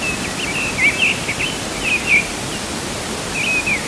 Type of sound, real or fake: real